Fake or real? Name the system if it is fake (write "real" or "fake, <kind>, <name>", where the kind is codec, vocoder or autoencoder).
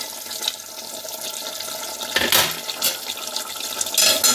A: real